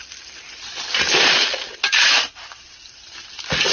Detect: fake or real real